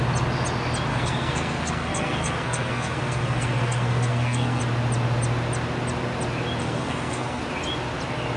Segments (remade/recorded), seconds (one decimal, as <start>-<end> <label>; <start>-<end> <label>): 0.0-0.9 recorded; 0.9-4.6 remade; 4.6-6.6 recorded; 6.6-7.4 remade; 7.4-8.4 recorded